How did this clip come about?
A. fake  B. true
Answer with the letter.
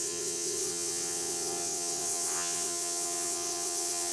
A